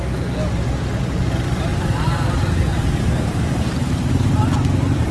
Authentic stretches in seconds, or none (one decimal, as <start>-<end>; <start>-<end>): 0.0-1.7